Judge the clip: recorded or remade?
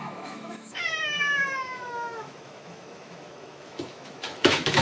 remade